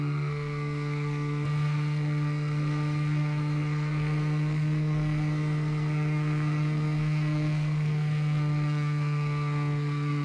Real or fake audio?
fake